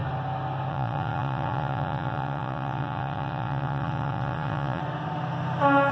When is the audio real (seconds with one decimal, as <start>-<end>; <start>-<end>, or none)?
0.0-0.7; 4.8-5.9